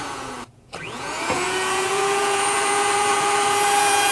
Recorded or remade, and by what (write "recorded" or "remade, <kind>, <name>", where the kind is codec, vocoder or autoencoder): remade, vocoder, Vocos